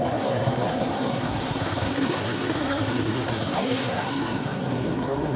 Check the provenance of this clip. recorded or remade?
remade